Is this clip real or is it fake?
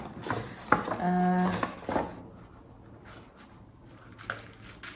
real